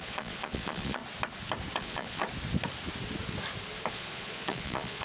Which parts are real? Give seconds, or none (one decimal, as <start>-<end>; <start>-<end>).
1.0-1.8; 2.2-3.9